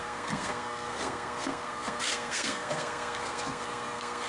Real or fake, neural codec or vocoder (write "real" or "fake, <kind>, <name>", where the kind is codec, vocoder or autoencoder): fake, codec, SNAC